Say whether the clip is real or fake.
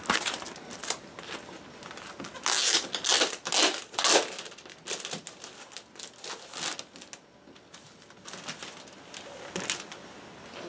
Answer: real